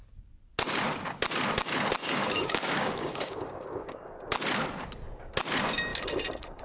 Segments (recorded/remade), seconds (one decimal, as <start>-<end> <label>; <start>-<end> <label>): 0.0-2.0 recorded; 2.0-4.0 remade; 4.0-6.6 recorded